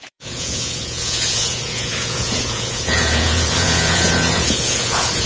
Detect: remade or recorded remade